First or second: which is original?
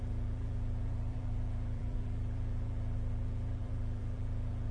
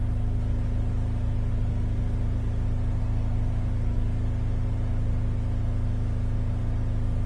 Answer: second